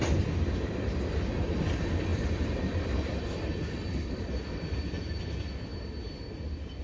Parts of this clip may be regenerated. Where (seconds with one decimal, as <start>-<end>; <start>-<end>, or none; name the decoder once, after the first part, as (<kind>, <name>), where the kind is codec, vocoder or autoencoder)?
2.1-5.1 (vocoder, BigVGAN v2); 5.7-6.8